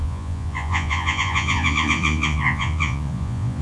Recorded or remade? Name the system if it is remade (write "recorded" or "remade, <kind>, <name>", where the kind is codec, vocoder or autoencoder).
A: remade, vocoder, Vocos